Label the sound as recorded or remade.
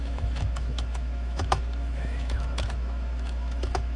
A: remade